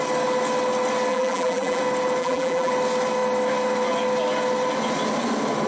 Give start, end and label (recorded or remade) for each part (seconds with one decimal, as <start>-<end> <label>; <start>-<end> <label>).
0.0-1.1 recorded; 1.1-1.8 remade; 1.8-2.2 recorded; 2.2-2.7 remade; 2.7-5.7 recorded